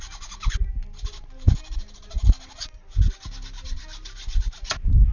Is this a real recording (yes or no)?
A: yes